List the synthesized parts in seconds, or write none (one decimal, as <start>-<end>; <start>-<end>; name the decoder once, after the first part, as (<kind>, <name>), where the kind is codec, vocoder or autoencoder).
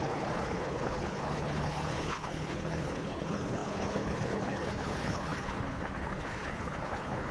0.0-7.3 (codec, HILCodec)